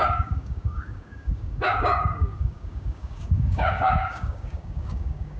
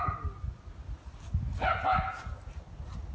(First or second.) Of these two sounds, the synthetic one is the first